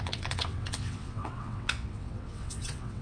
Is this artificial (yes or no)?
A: yes